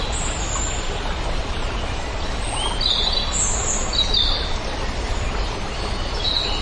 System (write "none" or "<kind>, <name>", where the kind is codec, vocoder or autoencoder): none